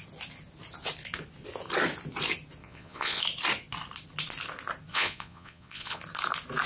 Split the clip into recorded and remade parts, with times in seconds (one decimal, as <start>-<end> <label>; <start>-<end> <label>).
0.0-2.6 recorded; 2.6-3.2 remade; 3.2-4.9 recorded; 4.9-6.0 remade; 6.0-6.7 recorded